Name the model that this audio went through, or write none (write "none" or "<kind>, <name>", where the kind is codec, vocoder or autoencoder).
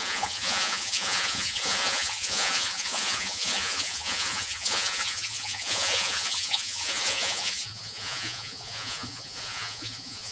vocoder, Vocos